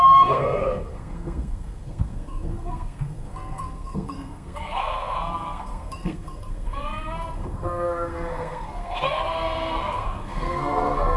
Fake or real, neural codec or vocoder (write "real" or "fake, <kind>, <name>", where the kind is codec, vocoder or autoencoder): fake, codec, SNAC